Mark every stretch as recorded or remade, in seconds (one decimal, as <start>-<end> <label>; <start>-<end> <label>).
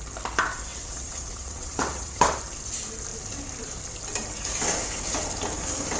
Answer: 0.0-0.7 recorded; 0.7-2.4 remade; 2.4-6.0 recorded